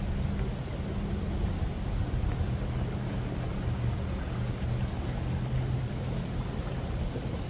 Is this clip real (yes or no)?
yes